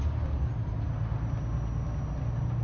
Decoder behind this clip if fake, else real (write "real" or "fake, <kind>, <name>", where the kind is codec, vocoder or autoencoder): real